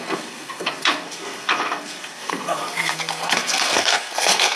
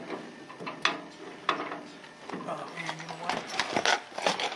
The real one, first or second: second